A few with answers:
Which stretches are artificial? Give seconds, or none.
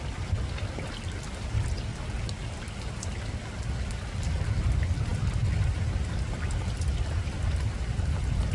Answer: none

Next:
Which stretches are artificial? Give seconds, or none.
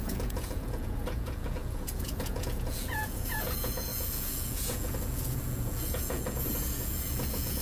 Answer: 0.0-7.6 (vocoder, Vocos)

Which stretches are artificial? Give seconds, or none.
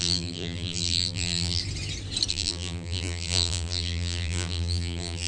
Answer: 0.0-1.6 (vocoder, BigVGAN v2); 2.3-5.3